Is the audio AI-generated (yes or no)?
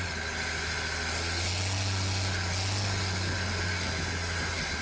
no